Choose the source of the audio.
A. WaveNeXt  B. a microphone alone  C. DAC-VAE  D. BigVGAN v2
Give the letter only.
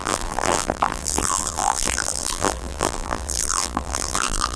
D